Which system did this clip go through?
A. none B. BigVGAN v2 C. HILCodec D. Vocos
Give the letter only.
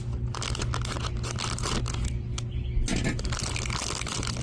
A